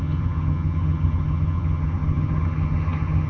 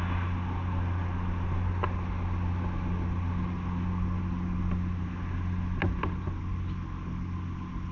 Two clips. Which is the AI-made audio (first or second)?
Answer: first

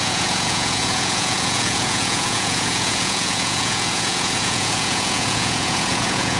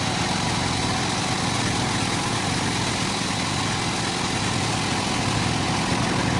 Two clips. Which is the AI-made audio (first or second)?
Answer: first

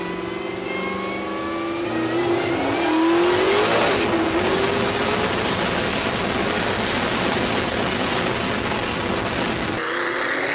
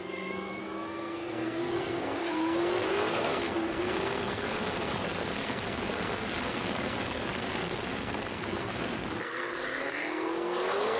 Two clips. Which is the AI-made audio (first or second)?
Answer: second